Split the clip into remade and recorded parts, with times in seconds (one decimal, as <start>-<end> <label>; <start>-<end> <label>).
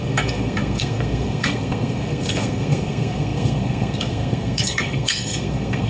0.0-5.9 remade